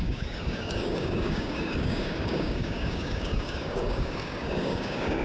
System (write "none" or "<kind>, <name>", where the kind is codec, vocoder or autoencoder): codec, DAC